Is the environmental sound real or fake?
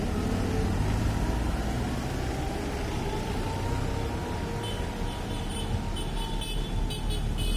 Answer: real